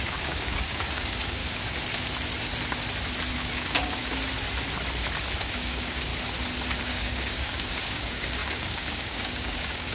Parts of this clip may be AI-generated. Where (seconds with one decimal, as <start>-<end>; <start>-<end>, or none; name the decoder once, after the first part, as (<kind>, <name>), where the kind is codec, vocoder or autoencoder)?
0.0-1.4 (codec, DAC); 3.3-4.0; 5.4-6.1; 6.8-9.9